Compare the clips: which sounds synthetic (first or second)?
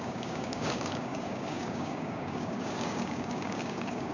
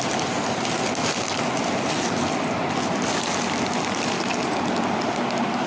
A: first